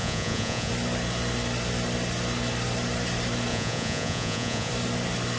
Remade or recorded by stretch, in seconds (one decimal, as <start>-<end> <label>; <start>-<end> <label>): 0.0-0.7 remade; 0.7-3.5 recorded; 3.5-4.7 remade; 4.7-5.4 recorded